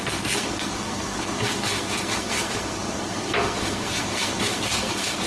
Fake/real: fake